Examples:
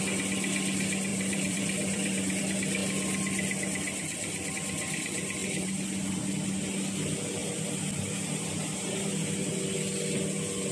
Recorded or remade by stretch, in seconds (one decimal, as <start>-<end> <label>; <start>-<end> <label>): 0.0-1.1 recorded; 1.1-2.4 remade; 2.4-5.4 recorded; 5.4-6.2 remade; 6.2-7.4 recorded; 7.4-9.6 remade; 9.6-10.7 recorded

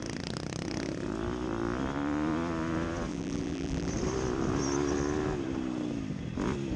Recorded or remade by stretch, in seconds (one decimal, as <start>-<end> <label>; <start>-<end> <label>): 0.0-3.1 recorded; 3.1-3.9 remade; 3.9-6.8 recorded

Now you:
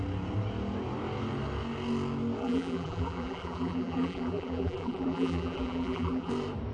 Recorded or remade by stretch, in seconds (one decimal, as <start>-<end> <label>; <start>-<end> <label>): 0.0-2.4 recorded; 2.4-6.3 remade; 6.3-6.7 recorded

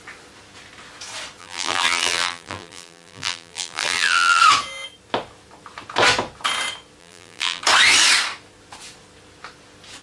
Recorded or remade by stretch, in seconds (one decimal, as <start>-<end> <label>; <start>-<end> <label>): 0.0-1.4 recorded; 1.4-4.4 remade; 4.4-7.0 recorded; 7.0-7.6 remade; 7.6-10.0 recorded

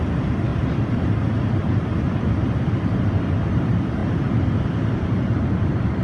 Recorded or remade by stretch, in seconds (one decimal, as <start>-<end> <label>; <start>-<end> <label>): 0.0-0.5 recorded; 0.5-1.3 remade; 1.3-4.0 recorded; 4.0-4.7 remade; 4.7-6.0 recorded